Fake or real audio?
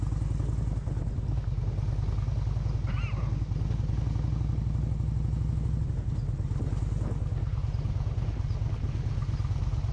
real